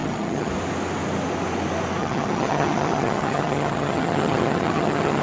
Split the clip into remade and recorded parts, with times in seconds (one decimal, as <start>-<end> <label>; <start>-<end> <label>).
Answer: 0.0-0.5 remade; 0.5-2.0 recorded; 2.0-5.2 remade